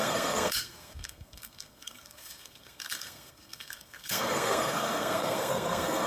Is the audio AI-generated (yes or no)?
yes